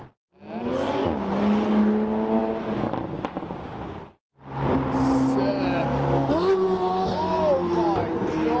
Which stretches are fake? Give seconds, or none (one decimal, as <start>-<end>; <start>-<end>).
none